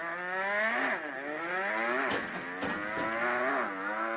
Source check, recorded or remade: recorded